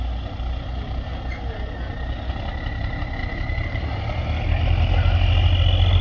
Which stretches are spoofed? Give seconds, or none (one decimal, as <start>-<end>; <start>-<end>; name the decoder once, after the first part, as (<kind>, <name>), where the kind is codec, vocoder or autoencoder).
3.2-4.2 (vocoder, BigVGAN v2)